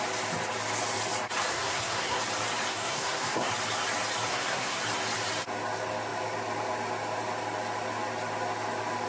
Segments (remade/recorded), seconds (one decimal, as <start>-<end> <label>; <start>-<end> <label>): 0.0-1.5 recorded; 1.5-2.2 remade; 2.2-2.7 recorded; 2.7-3.5 remade; 3.5-4.3 recorded; 4.3-4.8 remade; 4.8-9.1 recorded

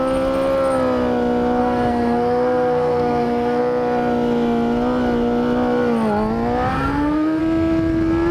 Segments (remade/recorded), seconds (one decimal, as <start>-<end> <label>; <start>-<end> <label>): 0.0-1.6 recorded; 1.6-3.6 remade; 3.6-6.7 recorded; 6.7-7.4 remade; 7.4-8.3 recorded

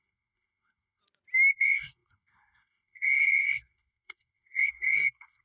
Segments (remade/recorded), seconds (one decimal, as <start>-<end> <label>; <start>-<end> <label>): 0.0-1.0 remade; 1.0-1.5 recorded; 1.5-5.4 remade

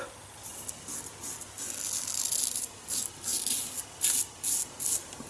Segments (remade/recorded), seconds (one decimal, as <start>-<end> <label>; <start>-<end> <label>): 0.0-5.3 recorded

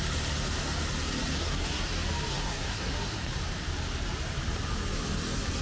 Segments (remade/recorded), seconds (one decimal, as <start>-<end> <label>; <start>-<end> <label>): 0.0-1.4 recorded; 1.4-1.9 remade; 1.9-2.3 recorded; 2.3-3.2 remade; 3.2-5.6 recorded